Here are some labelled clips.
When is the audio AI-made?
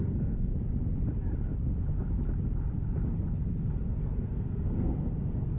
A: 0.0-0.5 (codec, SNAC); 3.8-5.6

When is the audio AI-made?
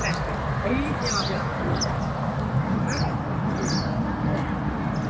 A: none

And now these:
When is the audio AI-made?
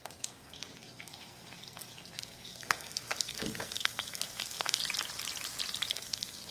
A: 0.0-4.8 (codec, SNAC); 5.9-6.5